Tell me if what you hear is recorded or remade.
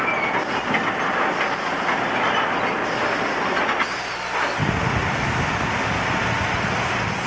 recorded